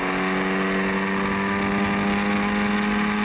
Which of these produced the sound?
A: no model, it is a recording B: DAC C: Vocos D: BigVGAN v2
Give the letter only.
A